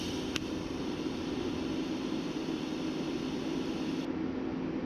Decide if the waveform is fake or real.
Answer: real